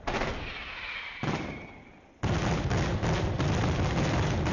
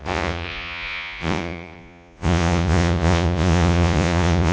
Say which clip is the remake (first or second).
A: second